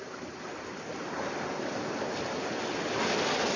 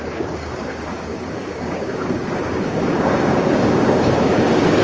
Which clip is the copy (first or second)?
second